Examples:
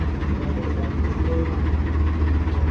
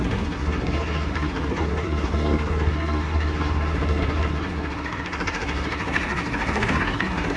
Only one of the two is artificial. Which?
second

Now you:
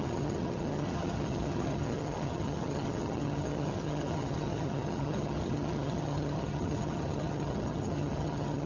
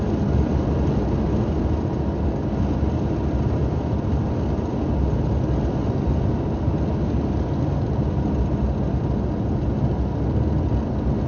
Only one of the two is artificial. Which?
first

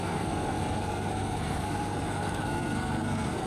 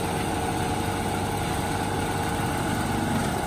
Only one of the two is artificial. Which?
first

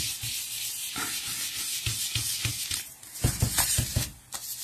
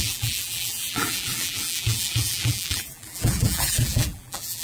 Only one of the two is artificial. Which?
second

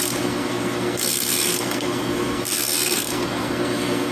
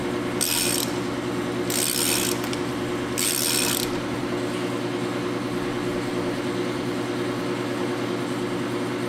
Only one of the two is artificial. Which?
first